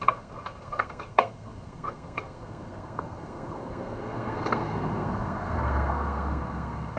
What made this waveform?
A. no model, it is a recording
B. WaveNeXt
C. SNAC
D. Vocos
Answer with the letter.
C